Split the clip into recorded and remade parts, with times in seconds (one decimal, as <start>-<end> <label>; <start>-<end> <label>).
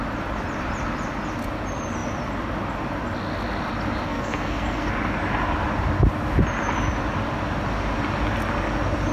0.0-4.1 recorded; 4.1-4.9 remade; 4.9-9.1 recorded